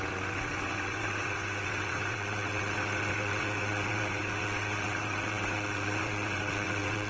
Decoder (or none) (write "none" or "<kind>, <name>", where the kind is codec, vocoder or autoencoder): vocoder, WaveNeXt